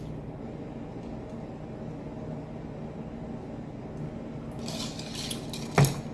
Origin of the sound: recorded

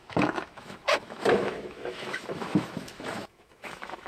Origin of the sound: remade